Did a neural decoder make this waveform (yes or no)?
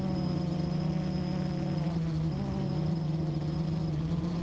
no